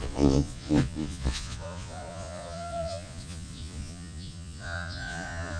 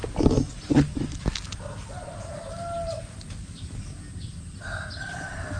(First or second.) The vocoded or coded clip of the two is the first